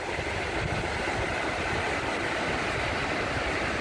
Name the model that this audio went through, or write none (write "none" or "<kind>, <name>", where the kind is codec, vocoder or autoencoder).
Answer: none